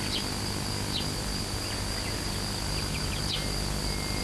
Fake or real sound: real